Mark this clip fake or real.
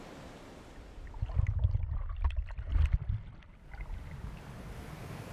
real